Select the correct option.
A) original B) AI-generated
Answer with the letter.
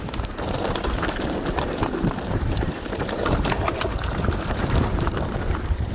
B